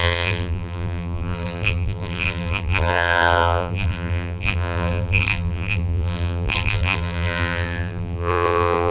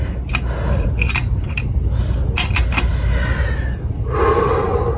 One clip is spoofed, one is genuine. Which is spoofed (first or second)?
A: first